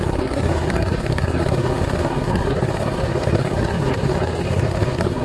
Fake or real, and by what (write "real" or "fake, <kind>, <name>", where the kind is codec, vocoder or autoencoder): fake, codec, SNAC